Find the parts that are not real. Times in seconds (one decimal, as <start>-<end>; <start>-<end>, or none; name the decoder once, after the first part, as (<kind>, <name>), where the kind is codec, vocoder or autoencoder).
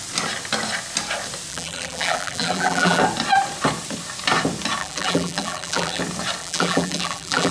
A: 1.5-3.0 (vocoder, BigVGAN v2); 4.8-6.0; 6.4-7.5